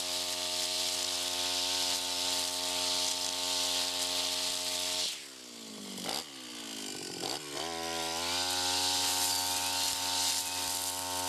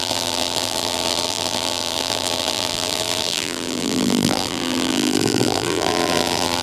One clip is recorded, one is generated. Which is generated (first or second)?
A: second